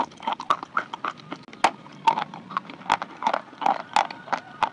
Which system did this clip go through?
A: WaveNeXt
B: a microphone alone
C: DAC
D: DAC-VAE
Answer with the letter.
B